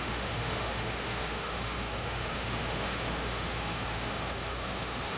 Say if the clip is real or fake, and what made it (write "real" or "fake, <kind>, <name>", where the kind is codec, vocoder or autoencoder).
fake, autoencoder, DAC-VAE